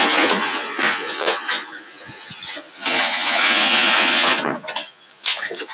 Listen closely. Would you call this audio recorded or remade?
remade